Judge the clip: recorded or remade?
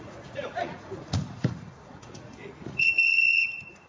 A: remade